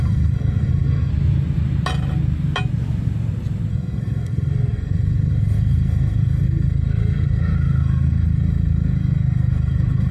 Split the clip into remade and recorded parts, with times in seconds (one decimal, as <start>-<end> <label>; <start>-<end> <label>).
0.0-1.1 remade; 1.1-3.7 recorded; 3.7-10.1 remade